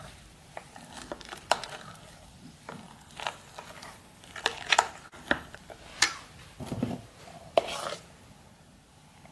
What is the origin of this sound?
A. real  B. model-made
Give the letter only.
B